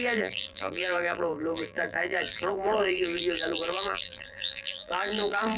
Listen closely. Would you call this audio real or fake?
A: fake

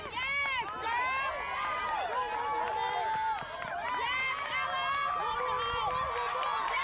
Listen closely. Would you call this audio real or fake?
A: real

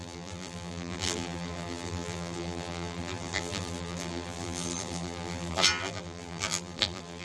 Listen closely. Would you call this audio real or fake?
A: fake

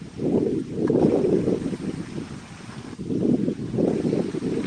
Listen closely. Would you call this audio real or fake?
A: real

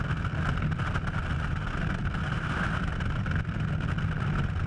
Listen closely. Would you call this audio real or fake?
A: real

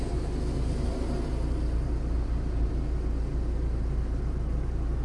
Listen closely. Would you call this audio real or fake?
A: real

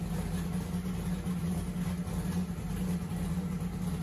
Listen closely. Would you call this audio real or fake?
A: real